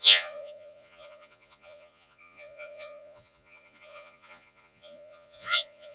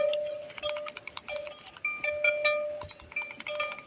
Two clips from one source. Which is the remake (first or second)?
first